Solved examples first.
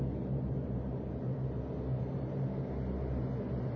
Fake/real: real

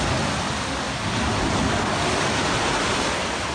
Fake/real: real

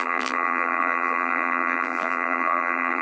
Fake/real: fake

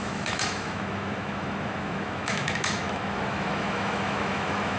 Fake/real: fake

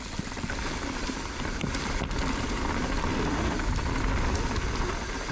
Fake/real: real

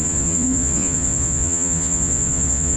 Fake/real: fake